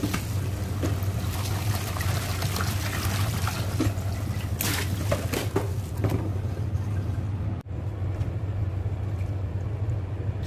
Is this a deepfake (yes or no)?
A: no